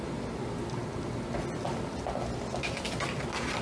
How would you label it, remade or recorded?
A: recorded